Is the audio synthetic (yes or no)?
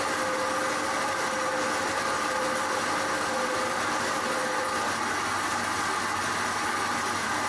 no